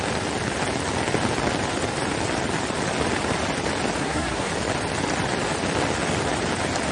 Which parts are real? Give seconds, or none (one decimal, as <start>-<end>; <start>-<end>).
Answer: 0.0-4.0; 4.5-6.9